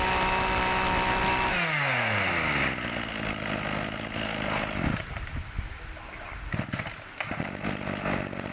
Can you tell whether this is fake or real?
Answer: real